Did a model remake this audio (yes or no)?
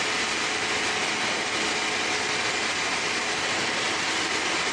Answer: no